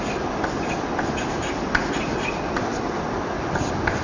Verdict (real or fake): real